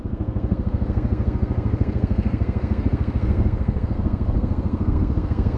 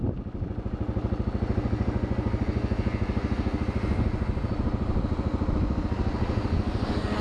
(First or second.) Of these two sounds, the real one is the second